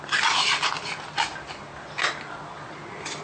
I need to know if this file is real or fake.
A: real